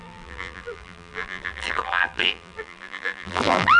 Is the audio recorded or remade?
remade